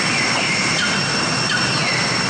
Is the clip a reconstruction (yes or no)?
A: no